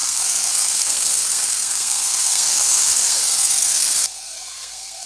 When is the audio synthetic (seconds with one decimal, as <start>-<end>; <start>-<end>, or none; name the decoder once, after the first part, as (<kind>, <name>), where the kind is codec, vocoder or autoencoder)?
0.0-5.1 (codec, SNAC)